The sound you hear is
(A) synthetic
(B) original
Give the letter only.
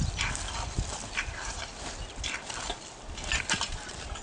B